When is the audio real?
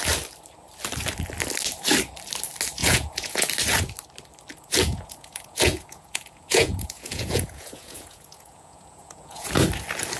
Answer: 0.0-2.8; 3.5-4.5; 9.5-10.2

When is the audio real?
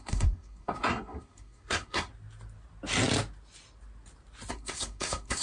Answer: 2.1-4.5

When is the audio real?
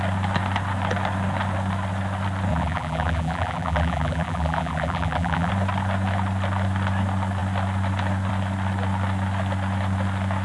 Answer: 0.0-2.5; 5.5-10.4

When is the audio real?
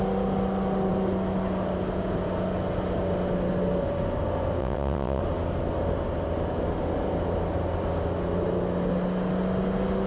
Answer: 0.0-4.6; 5.2-10.1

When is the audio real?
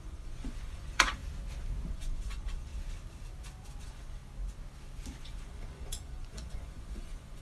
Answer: 1.2-1.9; 2.7-3.8; 4.2-5.2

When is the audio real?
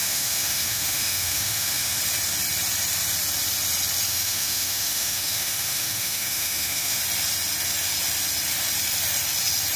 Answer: 2.0-4.1; 7.0-9.8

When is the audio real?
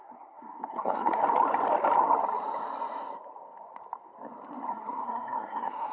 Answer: 1.2-4.7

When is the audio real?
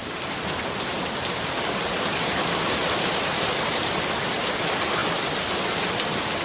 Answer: 3.8-5.0